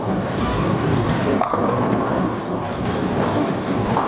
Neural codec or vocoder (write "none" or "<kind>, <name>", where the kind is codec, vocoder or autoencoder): codec, DAC